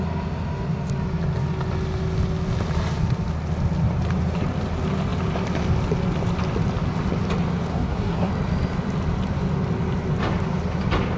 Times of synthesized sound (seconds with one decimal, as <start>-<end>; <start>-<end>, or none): 7.7-8.3